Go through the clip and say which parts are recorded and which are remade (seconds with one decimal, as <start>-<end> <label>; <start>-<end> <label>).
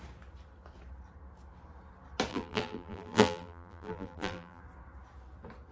0.0-2.3 recorded; 2.3-4.6 remade; 4.6-5.7 recorded